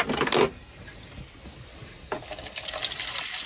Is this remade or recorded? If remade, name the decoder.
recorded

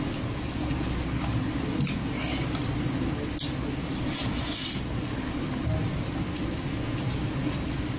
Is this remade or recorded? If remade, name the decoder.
recorded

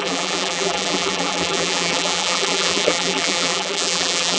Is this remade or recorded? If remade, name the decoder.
remade, vocoder, BigVGAN v2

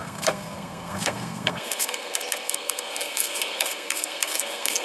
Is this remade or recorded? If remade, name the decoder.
remade, codec, SNAC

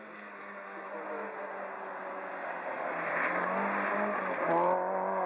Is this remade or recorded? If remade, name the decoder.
recorded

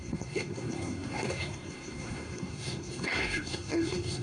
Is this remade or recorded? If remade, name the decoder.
remade, codec, SNAC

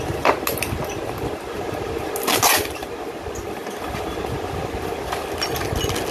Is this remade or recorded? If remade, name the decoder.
recorded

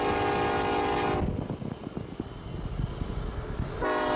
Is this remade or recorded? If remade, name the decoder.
recorded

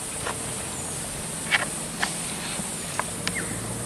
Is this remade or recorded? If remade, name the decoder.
recorded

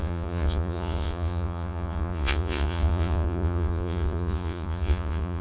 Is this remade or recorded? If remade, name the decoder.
remade, vocoder, Vocos